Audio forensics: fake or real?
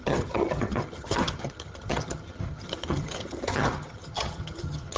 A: fake